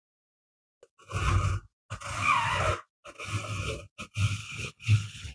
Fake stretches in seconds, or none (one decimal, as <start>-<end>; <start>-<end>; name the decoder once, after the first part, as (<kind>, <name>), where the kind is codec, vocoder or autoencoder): 4.4-5.3 (codec, HILCodec)